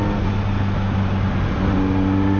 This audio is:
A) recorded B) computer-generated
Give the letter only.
A